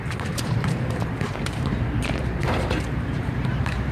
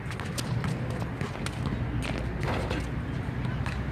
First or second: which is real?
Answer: second